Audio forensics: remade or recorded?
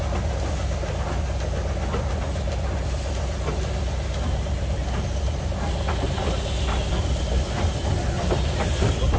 recorded